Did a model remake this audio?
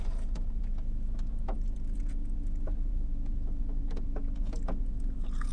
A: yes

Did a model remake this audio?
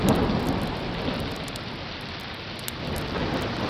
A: no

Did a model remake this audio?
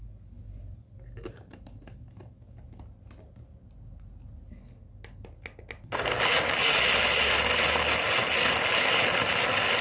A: no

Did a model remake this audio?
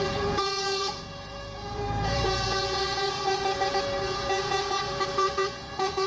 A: yes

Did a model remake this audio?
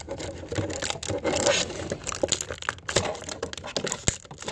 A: no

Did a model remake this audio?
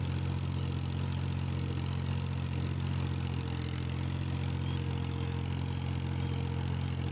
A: no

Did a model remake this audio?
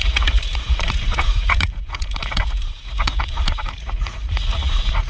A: yes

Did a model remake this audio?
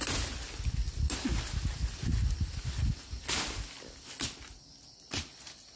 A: no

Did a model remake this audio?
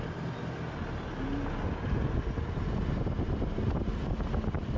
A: no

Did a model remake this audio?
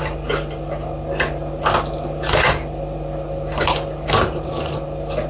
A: no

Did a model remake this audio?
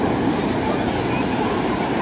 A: no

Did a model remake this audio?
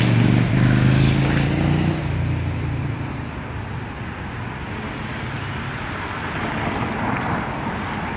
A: no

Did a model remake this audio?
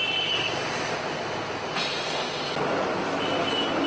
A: no